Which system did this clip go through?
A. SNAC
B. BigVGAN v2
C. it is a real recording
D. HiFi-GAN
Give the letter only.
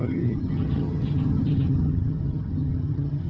D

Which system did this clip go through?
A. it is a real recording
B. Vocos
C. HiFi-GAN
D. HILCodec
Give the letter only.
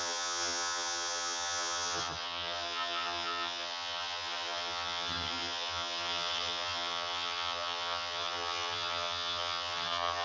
C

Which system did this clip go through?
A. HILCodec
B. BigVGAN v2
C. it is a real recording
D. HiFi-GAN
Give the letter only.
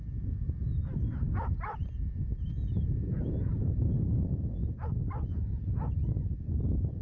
C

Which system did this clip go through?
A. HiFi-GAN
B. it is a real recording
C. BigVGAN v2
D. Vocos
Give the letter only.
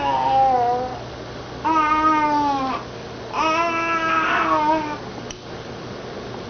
B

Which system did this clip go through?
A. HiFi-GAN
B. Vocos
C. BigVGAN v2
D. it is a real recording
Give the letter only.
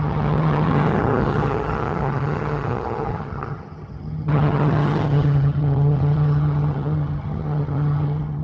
A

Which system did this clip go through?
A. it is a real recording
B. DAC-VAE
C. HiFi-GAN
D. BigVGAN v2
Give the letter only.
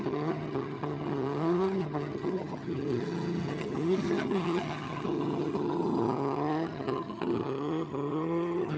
C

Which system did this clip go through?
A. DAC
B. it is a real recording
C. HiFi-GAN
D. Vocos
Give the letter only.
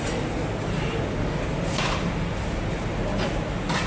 B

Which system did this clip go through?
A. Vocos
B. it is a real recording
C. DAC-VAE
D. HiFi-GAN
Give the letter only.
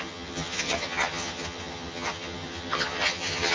D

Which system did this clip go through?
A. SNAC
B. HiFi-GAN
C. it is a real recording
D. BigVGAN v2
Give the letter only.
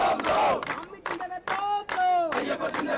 C